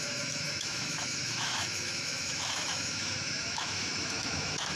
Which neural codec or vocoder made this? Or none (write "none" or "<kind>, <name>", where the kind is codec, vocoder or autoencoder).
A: autoencoder, DAC-VAE